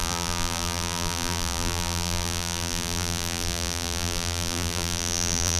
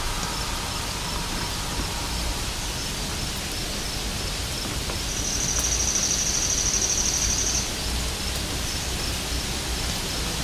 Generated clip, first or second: first